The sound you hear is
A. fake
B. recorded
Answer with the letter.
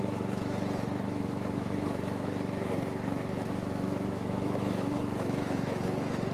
A